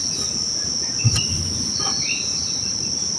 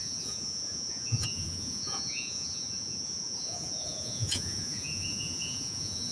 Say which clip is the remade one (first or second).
second